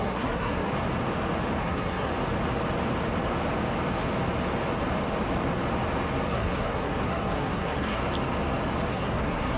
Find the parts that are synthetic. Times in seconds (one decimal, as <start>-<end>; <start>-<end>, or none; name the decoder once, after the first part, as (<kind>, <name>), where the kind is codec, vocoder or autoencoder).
0.0-0.7 (codec, SNAC); 1.6-2.1; 6.3-8.0; 8.9-9.6

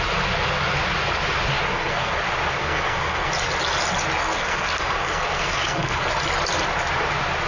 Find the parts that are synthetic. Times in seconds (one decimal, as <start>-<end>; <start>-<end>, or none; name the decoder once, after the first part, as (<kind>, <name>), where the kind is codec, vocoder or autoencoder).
1.7-2.2 (codec, SNAC); 2.6-3.3; 4.2-6.1

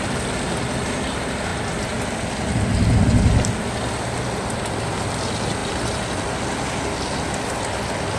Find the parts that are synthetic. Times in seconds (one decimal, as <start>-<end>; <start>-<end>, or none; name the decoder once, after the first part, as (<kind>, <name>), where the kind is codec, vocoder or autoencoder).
none

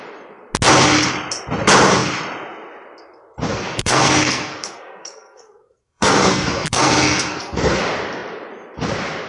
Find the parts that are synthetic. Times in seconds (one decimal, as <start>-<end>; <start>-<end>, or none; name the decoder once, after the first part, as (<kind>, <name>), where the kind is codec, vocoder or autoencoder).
3.5-7.8 (codec, SNAC)

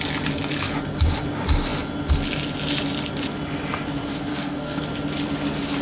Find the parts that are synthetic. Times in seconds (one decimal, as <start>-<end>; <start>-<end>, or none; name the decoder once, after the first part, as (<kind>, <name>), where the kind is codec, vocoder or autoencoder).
4.3-4.8 (codec, SNAC)